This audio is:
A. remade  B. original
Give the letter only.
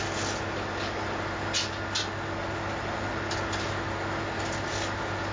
B